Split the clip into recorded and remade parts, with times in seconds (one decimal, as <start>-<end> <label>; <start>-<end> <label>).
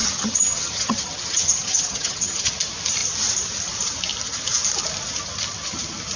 0.0-2.5 remade; 2.5-6.2 recorded